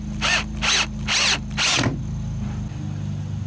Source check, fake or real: real